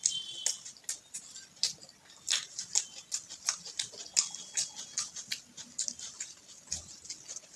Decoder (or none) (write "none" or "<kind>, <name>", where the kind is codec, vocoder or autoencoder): none